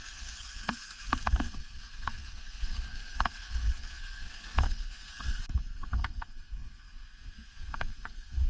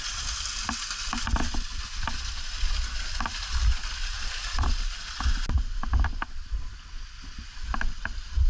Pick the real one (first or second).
second